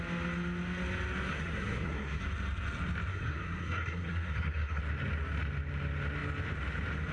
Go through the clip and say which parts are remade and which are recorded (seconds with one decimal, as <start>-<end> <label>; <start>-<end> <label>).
0.0-1.3 recorded; 1.3-2.2 remade; 2.2-3.1 recorded; 3.1-4.8 remade; 4.8-7.1 recorded